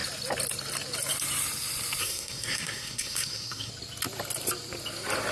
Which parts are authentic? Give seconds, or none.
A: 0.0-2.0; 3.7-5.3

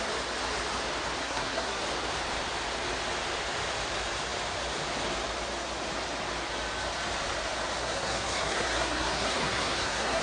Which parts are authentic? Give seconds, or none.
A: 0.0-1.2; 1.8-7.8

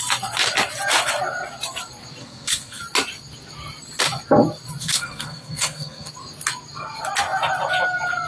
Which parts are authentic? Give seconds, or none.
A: 0.0-2.2; 2.8-4.8; 6.1-8.3